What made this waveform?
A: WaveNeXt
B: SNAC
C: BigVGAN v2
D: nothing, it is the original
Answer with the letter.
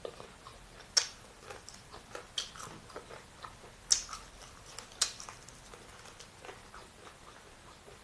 D